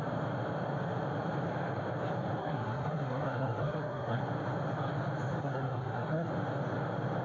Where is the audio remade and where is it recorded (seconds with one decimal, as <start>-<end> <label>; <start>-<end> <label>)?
0.0-2.4 recorded; 2.4-4.2 remade; 4.2-5.4 recorded; 5.4-6.3 remade; 6.3-7.2 recorded